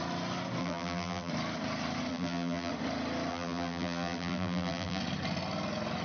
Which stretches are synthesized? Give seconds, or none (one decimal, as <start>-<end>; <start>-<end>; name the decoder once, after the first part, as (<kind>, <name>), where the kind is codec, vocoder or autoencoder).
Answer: 0.6-1.3 (vocoder, BigVGAN v2); 2.1-2.7; 3.3-5.0